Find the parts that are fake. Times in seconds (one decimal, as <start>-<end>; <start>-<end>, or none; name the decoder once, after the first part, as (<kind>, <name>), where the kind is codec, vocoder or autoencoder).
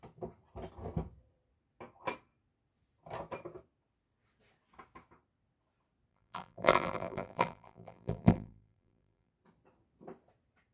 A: 6.1-9.3 (vocoder, BigVGAN v2)